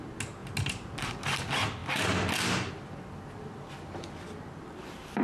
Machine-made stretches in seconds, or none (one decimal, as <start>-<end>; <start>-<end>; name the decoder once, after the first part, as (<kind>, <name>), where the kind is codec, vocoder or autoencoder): none